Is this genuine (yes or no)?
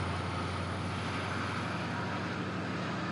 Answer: yes